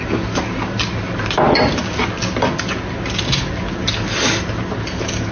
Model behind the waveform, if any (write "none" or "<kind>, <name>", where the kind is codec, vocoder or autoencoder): none